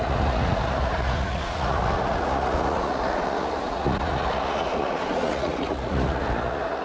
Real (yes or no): no